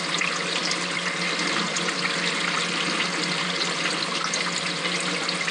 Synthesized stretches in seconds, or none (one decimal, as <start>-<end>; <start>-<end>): none